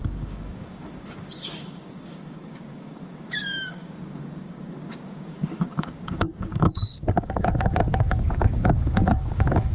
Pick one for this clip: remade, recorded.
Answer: remade